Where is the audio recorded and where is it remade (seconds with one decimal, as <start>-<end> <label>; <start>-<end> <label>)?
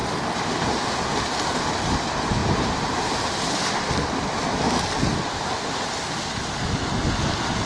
0.0-2.4 recorded; 2.4-3.7 remade; 3.7-7.7 recorded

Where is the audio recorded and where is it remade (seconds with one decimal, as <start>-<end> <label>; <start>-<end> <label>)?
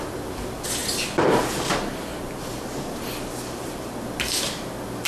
0.0-5.1 recorded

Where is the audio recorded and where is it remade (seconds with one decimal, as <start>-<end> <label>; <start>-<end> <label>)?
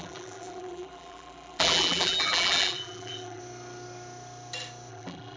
0.0-3.4 remade; 3.4-4.9 recorded; 4.9-5.4 remade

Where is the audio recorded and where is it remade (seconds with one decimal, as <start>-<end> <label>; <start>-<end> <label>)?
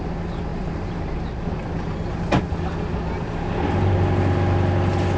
0.0-0.5 recorded; 0.5-2.3 remade; 2.3-5.2 recorded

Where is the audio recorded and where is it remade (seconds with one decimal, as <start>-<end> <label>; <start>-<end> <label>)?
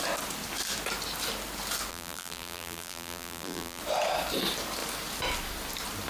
0.0-1.9 recorded; 1.9-3.8 remade; 3.8-6.1 recorded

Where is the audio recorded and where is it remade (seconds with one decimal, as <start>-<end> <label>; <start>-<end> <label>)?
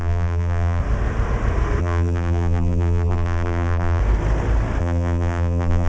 0.0-0.8 remade; 0.8-1.8 recorded; 1.8-4.0 remade; 4.0-4.8 recorded; 4.8-5.9 remade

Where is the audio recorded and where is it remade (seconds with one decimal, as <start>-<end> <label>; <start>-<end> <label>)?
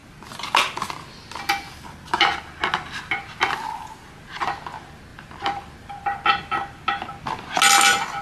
0.0-5.1 recorded; 5.1-6.0 remade; 6.0-8.2 recorded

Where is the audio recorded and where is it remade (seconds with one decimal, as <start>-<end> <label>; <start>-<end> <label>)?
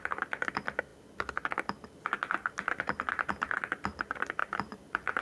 0.0-4.4 recorded; 4.4-5.2 remade